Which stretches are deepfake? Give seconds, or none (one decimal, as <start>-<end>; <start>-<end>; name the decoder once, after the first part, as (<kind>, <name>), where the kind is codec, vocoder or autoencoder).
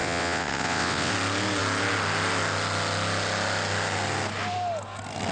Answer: 0.0-1.1 (vocoder, WaveNeXt)